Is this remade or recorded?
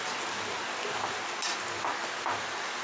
recorded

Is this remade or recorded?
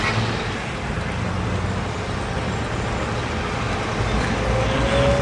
recorded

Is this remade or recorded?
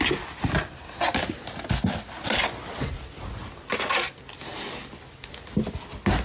recorded